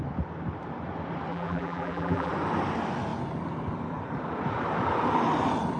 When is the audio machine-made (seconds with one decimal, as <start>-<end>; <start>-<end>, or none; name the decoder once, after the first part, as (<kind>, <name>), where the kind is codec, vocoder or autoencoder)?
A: 1.3-2.3 (vocoder, BigVGAN v2)